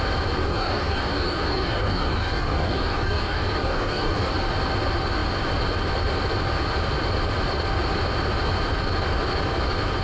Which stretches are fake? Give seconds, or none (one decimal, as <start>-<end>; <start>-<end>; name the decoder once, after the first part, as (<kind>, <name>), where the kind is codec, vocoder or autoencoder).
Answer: 0.4-4.3 (codec, DAC)